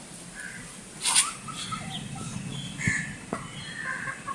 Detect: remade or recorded recorded